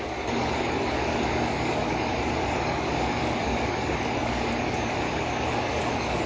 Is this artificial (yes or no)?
yes